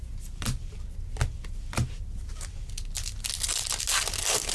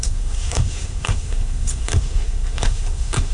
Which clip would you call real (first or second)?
first